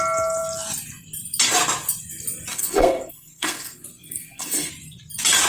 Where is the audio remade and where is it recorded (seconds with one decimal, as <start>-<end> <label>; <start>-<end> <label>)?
0.0-2.5 recorded; 2.5-4.7 remade; 4.7-5.5 recorded